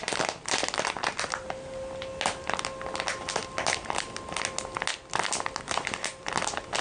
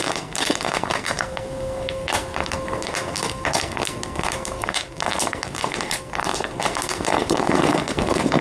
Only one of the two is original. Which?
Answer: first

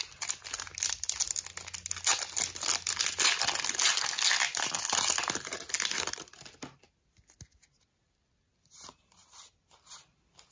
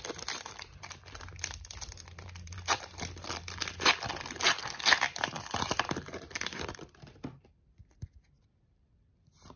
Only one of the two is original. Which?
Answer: first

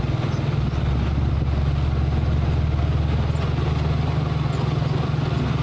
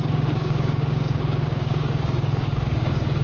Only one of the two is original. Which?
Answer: first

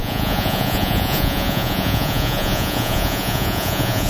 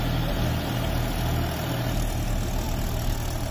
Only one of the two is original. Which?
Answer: second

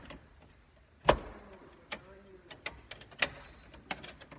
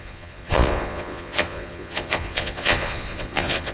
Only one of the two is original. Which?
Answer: first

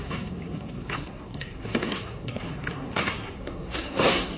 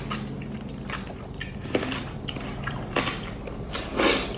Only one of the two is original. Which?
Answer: second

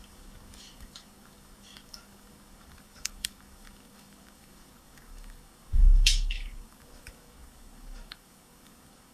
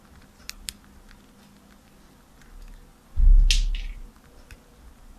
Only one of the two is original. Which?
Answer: second